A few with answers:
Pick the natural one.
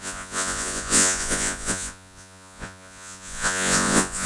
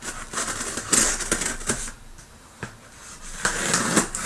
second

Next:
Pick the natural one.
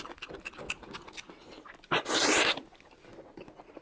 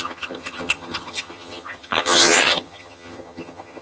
first